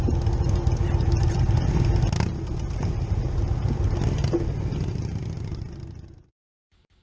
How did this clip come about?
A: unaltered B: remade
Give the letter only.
A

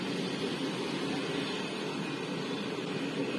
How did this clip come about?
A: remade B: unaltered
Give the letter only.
B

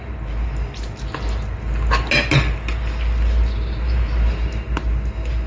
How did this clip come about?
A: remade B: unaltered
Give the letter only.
B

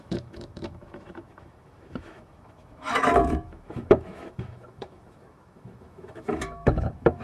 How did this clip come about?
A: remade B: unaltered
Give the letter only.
A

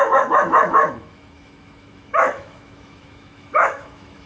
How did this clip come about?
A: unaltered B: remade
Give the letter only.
B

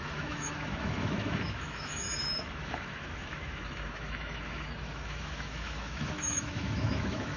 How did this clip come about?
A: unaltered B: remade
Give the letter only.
B